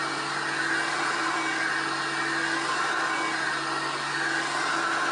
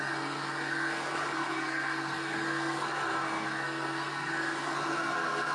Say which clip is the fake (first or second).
second